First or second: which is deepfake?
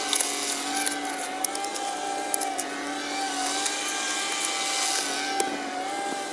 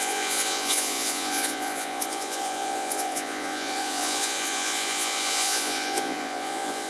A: second